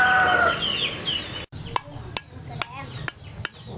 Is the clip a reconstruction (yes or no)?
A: no